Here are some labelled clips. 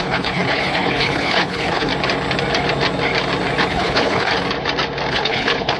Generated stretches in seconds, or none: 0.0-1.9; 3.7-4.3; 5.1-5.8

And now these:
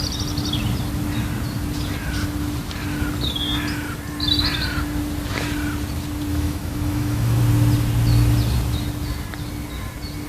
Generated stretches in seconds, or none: 6.3-7.4

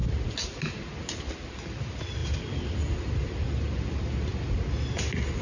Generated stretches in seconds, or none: 1.2-4.3